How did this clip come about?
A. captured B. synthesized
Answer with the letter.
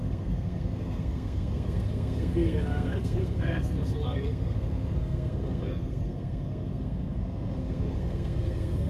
B